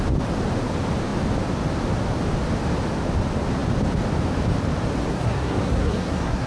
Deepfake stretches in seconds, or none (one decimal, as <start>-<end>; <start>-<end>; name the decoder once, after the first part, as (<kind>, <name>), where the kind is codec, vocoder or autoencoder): 5.1-6.5 (codec, SNAC)

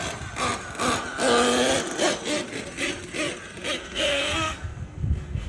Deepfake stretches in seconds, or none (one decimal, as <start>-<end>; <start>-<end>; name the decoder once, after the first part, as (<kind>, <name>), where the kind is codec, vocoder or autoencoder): 3.8-5.5 (codec, SNAC)

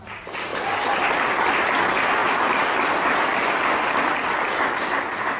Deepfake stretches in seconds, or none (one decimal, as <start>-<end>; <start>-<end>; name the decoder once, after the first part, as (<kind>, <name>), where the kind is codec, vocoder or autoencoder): none

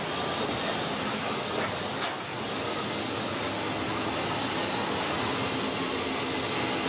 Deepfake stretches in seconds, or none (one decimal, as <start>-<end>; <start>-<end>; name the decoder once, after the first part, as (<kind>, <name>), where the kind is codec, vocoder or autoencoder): none

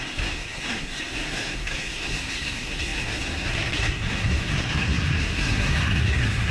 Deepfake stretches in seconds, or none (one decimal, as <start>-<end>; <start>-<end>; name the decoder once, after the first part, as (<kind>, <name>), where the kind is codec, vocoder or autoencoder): 0.0-6.5 (codec, SNAC)